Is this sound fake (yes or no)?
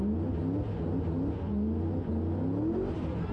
no